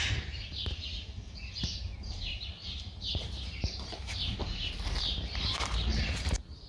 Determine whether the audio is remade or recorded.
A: remade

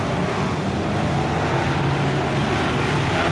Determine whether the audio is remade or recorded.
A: recorded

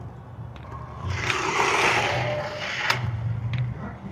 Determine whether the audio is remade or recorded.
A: recorded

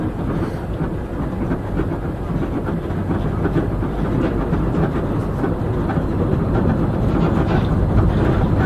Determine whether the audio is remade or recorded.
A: recorded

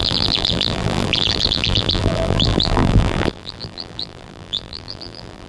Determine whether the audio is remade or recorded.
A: remade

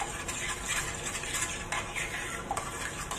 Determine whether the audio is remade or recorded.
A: recorded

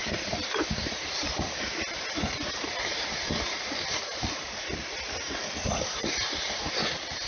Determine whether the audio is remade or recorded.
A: remade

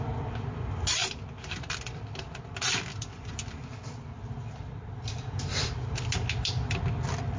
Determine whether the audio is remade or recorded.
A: remade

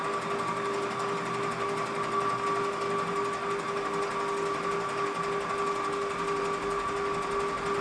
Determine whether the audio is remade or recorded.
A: recorded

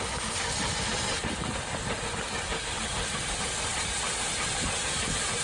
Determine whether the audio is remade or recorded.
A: recorded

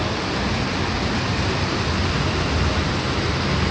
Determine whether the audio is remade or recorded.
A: recorded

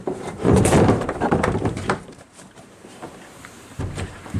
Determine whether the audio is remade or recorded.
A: remade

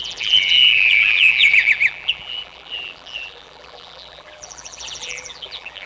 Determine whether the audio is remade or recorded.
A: remade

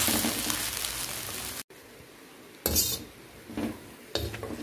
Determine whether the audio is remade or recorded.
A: recorded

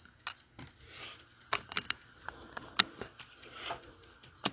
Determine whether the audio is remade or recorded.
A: recorded